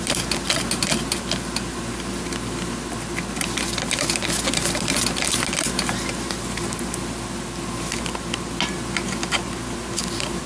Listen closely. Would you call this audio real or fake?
real